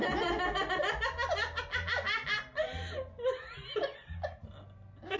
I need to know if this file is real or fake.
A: real